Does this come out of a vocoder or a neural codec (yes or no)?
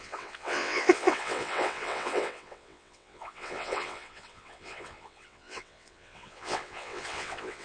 yes